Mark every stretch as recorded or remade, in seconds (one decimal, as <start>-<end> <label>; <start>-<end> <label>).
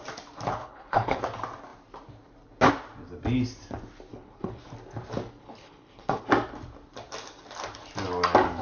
0.0-0.6 recorded; 0.6-1.2 remade; 1.2-4.1 recorded; 4.1-4.6 remade; 4.6-5.4 recorded; 5.4-6.3 remade; 6.3-8.6 recorded